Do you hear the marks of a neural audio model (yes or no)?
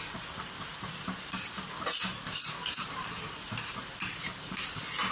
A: no